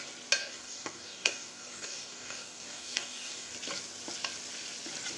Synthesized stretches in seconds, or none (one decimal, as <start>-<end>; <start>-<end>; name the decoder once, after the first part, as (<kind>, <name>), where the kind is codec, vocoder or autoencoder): 0.4-3.5 (codec, DAC)